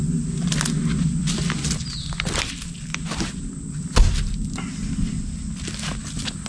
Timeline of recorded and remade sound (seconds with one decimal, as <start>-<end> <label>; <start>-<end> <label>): 0.0-6.5 recorded

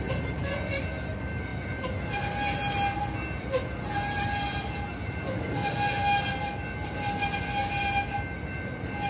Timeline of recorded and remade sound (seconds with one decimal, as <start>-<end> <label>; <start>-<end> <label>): 0.0-9.1 recorded

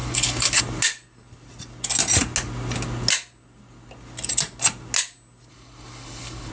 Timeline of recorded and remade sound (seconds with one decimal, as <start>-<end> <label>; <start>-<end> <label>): 0.0-0.6 remade; 0.6-5.5 recorded; 5.5-6.5 remade

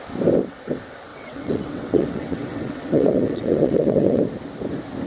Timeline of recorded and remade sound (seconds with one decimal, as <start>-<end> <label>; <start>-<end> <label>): 0.0-1.1 recorded; 1.1-4.2 remade; 4.2-5.1 recorded

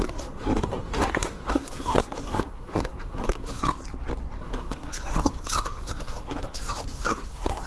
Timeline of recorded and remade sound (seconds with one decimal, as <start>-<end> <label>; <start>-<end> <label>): 0.0-3.6 remade; 3.6-4.4 recorded; 4.4-7.7 remade

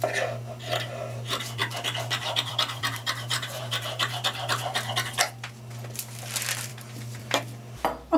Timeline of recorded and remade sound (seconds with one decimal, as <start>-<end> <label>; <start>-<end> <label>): 0.0-1.6 recorded; 1.6-4.9 remade; 4.9-8.2 recorded

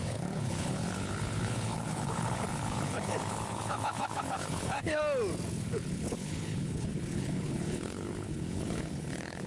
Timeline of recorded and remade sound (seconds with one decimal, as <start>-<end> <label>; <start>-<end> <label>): 0.0-5.0 remade; 5.0-5.5 recorded; 5.5-9.5 remade

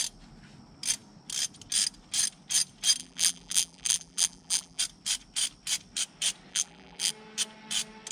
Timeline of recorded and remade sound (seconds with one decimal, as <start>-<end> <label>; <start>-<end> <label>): 0.0-3.0 recorded; 3.0-4.8 remade; 4.8-6.5 recorded; 6.5-7.1 remade; 7.1-8.1 recorded